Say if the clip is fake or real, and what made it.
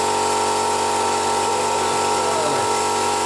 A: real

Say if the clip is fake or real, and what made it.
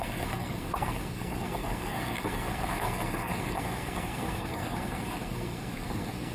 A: fake, codec, SNAC